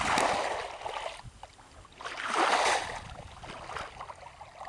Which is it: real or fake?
real